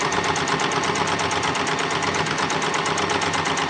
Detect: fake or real real